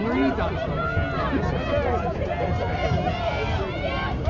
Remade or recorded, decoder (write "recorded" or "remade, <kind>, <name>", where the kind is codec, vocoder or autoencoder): recorded